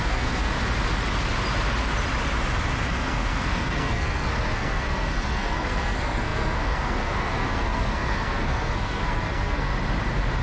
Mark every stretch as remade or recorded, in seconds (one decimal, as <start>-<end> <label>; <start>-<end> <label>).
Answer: 0.0-0.5 remade; 0.5-2.9 recorded; 2.9-9.7 remade; 9.7-10.4 recorded